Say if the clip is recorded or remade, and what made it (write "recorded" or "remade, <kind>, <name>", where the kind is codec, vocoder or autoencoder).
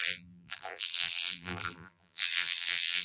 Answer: remade, vocoder, BigVGAN v2